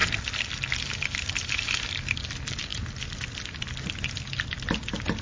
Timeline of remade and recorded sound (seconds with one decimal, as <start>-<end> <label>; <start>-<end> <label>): 0.0-5.2 recorded